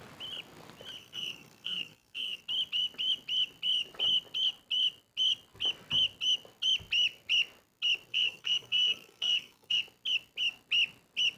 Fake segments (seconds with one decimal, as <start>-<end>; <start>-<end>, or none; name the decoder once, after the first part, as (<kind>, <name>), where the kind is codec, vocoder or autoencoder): 1.0-2.4 (codec, SNAC); 8.1-9.8